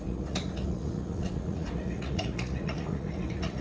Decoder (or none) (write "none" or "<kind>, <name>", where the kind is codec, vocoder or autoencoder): vocoder, Vocos